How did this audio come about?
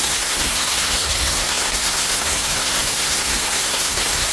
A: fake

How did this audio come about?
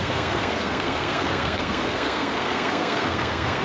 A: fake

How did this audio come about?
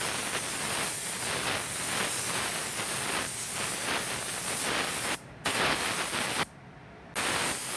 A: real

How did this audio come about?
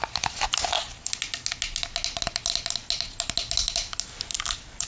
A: real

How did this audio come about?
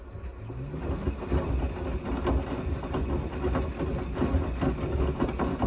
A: real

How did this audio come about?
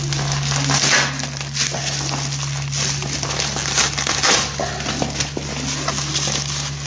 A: real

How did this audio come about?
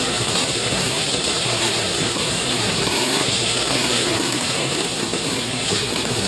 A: fake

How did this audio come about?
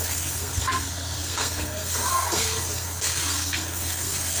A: fake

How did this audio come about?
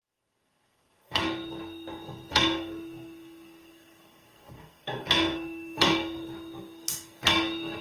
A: fake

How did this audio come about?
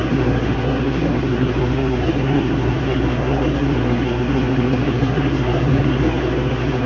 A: fake